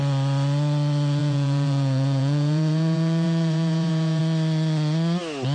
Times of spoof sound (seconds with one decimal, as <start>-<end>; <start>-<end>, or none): 1.2-4.2